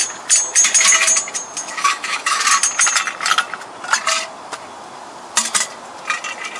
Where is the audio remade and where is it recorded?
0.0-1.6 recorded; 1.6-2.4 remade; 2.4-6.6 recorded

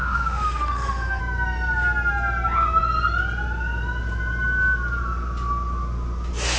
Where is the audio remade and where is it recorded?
0.0-1.2 remade; 1.2-6.6 recorded

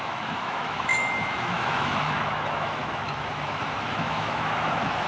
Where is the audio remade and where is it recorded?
0.0-5.1 remade

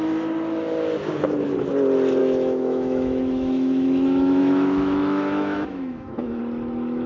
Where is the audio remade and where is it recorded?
0.0-2.2 recorded; 2.2-6.4 remade; 6.4-7.1 recorded

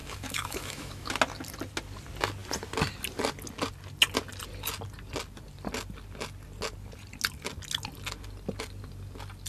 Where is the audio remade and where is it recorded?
0.0-1.1 remade; 1.1-9.5 recorded

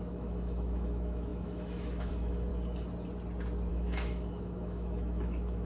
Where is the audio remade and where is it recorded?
0.0-2.5 remade; 2.5-3.7 recorded; 3.7-5.7 remade

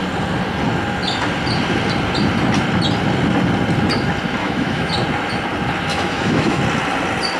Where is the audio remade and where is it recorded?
0.0-4.4 recorded; 4.4-4.9 remade; 4.9-5.9 recorded; 5.9-6.6 remade; 6.6-7.4 recorded